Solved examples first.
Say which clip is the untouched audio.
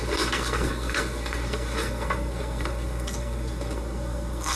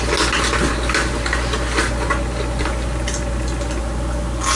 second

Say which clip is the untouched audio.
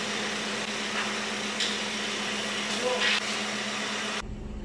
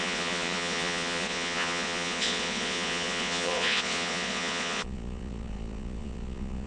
first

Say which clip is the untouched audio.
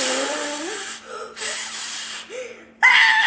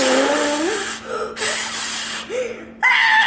second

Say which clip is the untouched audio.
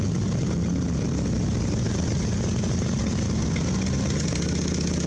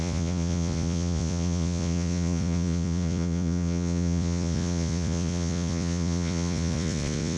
first